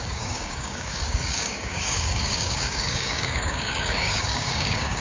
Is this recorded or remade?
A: remade